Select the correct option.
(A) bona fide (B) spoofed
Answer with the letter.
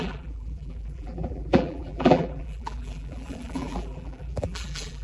B